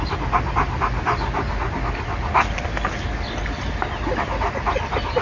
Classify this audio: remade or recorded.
recorded